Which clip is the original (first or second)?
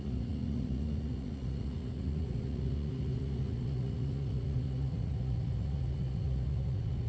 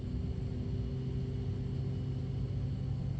second